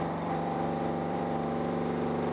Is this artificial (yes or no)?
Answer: yes